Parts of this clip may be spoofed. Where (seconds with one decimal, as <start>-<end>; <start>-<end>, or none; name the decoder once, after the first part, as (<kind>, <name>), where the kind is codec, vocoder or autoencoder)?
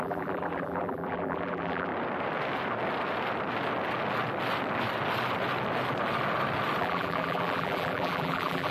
0.0-1.9 (vocoder, BigVGAN v2); 6.8-8.7